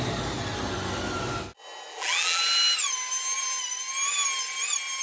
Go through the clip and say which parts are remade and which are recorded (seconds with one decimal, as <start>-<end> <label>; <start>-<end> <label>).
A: 0.0-1.9 recorded; 1.9-2.4 remade; 2.4-5.0 recorded